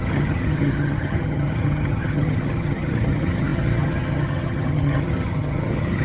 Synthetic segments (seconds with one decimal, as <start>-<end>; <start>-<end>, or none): 0.0-6.0